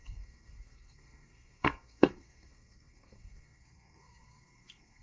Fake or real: fake